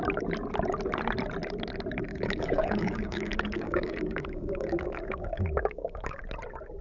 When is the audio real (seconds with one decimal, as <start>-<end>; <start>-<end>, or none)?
0.0-2.1; 6.2-6.8